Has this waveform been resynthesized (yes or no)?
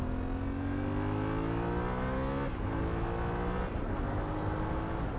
no